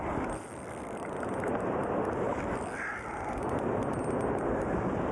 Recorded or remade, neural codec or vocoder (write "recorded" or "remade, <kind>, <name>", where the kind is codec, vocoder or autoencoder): recorded